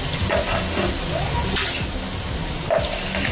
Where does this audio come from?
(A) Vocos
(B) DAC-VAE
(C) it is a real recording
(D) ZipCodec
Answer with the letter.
C